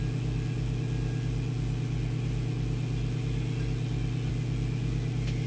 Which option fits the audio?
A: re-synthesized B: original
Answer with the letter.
B